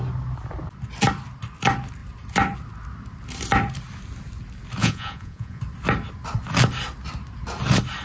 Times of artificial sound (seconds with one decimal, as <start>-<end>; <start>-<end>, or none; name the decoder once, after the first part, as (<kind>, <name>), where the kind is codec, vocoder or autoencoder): 4.8-5.6 (vocoder, Vocos)